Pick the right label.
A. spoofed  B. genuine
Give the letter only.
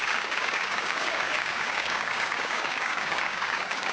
A